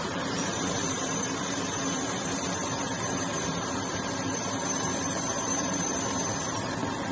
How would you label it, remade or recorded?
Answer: remade